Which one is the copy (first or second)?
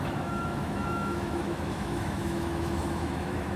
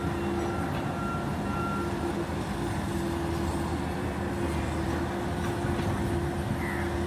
first